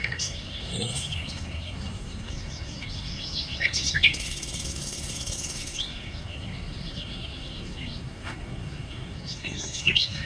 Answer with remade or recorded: remade